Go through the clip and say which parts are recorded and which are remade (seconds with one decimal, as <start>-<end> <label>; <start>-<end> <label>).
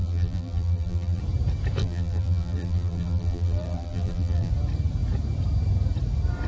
0.0-1.2 remade; 1.2-1.8 recorded; 1.8-4.5 remade; 4.5-6.5 recorded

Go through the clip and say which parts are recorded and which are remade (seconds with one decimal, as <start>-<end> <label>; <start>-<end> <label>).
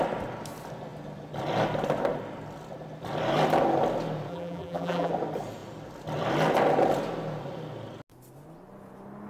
0.0-4.3 recorded; 4.3-5.1 remade; 5.1-9.3 recorded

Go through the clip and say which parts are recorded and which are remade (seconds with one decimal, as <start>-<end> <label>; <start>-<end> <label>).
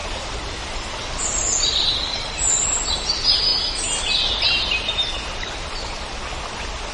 0.0-6.9 recorded